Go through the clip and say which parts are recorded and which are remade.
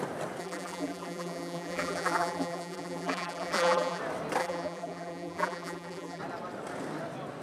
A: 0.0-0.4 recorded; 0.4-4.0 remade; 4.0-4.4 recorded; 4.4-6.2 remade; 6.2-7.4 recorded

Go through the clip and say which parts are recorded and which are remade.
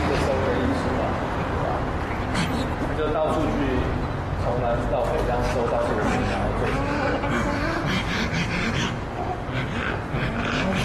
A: 0.0-10.8 recorded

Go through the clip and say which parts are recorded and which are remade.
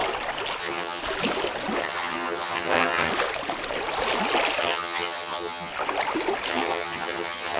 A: 0.0-0.6 recorded; 0.6-1.0 remade; 1.0-1.8 recorded; 1.8-3.1 remade; 3.1-4.6 recorded; 4.6-5.7 remade; 5.7-6.5 recorded; 6.5-7.6 remade